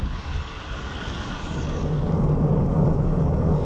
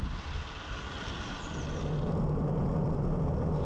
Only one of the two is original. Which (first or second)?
second